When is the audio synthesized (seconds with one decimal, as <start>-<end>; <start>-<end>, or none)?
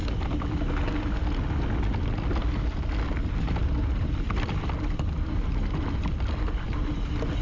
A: 3.6-6.9